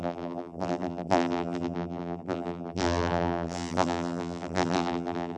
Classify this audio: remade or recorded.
remade